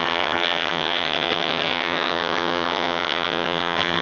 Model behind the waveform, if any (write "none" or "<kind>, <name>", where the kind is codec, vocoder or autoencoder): vocoder, HiFi-GAN